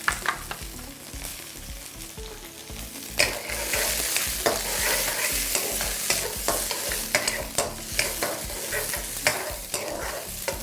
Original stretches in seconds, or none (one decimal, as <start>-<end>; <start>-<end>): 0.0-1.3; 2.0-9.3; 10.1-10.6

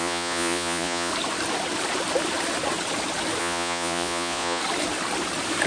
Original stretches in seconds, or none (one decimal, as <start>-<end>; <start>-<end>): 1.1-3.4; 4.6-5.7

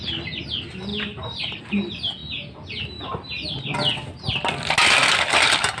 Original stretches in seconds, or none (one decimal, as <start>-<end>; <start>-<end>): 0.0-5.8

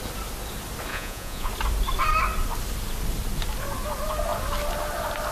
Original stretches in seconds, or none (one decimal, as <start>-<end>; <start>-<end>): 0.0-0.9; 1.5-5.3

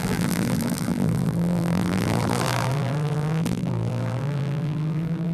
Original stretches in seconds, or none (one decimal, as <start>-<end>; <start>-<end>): none